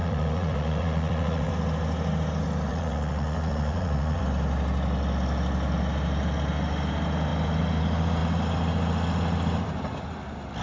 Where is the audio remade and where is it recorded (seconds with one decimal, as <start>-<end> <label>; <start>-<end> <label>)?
0.0-1.5 remade; 1.5-2.7 recorded; 2.7-4.2 remade; 4.2-10.6 recorded